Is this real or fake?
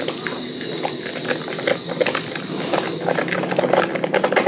real